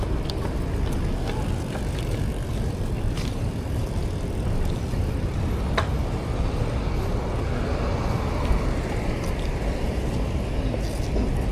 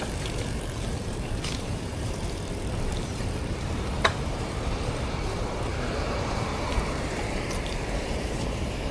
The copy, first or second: second